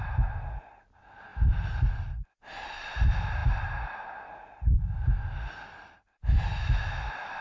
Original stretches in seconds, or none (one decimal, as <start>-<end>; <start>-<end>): 0.0-7.4

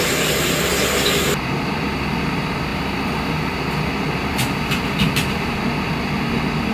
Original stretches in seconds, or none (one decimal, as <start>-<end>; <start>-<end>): 0.0-6.7

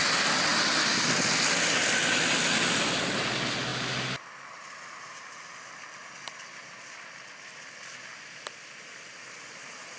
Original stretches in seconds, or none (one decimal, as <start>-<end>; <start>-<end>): 0.0-10.0

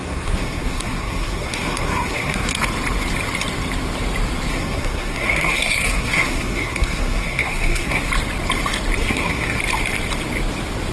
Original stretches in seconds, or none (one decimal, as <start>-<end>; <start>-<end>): 2.6-4.5; 8.1-9.0; 9.6-10.9

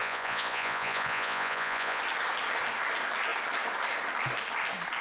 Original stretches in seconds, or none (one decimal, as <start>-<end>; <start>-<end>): 2.0-5.0

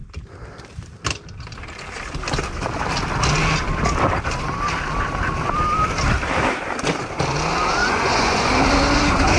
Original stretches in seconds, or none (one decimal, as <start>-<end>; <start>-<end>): 0.0-7.8; 8.5-9.4

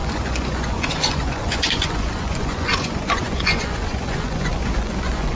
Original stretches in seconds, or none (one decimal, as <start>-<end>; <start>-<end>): none